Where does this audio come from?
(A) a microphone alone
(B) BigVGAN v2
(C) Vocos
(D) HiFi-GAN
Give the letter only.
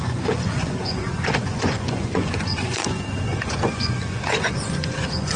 C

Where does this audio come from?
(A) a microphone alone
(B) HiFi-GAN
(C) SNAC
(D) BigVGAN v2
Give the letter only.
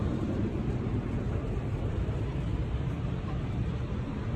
D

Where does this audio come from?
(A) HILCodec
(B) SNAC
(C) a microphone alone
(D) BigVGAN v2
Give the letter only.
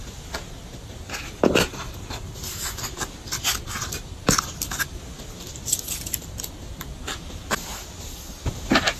C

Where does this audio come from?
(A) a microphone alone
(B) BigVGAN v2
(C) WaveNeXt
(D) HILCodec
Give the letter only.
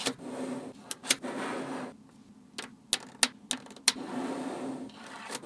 A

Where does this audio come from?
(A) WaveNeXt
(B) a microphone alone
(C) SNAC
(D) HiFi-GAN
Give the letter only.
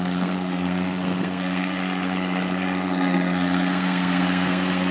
C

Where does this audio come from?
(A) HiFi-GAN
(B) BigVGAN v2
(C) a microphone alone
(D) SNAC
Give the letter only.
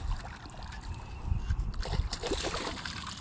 C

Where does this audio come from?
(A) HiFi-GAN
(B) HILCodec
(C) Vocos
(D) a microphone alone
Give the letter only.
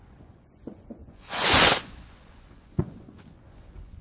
C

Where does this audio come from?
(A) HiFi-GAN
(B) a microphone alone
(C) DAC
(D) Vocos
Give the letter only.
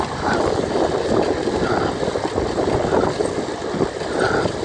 B